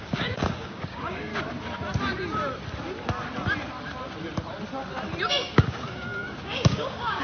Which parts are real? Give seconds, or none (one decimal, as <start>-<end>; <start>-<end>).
1.3-5.3